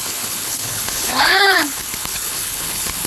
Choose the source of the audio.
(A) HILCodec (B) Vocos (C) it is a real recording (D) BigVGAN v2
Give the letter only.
A